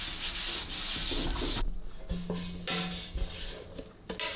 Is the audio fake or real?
real